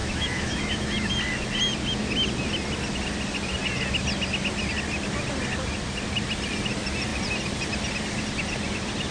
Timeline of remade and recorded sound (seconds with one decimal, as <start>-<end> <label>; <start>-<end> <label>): 0.0-1.1 remade; 1.1-9.1 recorded